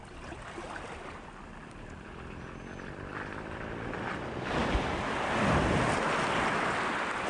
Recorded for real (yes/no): yes